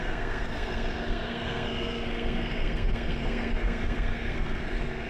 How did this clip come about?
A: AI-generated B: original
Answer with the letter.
A